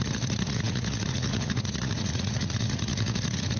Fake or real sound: fake